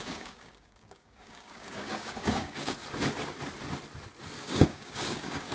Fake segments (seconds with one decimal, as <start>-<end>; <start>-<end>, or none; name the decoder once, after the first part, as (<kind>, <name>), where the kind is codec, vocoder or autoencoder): 0.0-2.8 (codec, DAC); 4.4-5.5